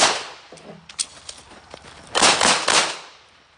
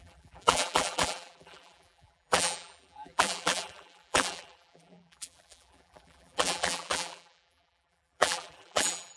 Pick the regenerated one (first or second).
second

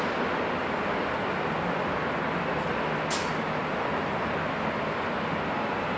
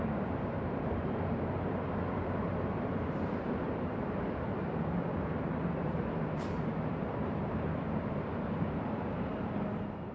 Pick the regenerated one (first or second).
second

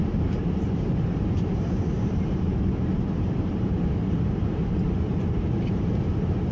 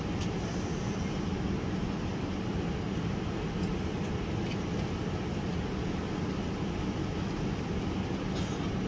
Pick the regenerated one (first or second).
first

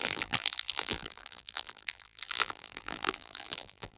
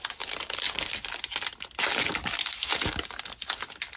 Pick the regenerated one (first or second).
first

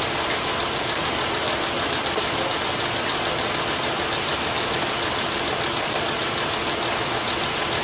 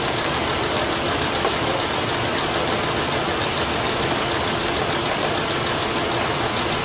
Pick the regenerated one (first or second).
second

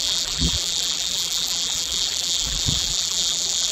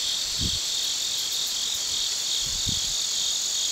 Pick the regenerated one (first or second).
first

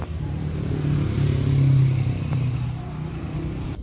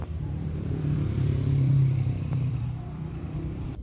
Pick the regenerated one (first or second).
second